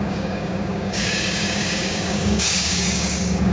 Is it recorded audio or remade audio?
remade